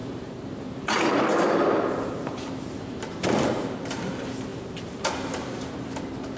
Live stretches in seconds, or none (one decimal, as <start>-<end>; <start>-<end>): none

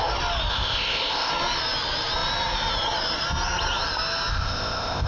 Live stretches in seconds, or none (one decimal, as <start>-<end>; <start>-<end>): 0.0-0.5; 1.3-4.3

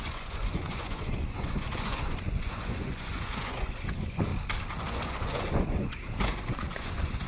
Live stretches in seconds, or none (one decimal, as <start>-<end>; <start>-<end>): 4.3-4.8

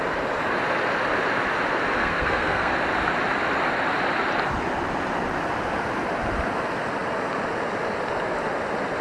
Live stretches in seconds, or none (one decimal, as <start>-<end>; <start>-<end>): 0.0-2.0; 2.7-9.0

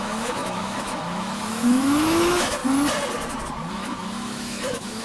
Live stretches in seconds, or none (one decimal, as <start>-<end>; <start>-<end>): 2.6-3.7

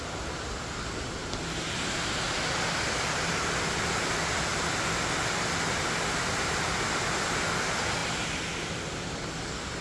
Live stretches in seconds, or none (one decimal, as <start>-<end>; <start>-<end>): 0.0-9.8

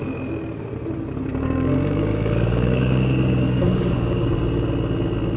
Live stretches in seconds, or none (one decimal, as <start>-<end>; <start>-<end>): 0.0-1.3; 4.3-5.4

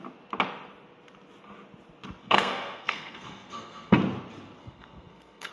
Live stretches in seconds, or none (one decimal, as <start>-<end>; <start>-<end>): 0.0-2.2; 4.0-4.6